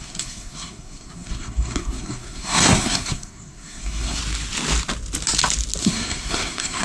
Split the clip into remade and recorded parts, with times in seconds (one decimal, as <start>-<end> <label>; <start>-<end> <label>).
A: 0.0-4.2 remade; 4.2-5.8 recorded; 5.8-6.8 remade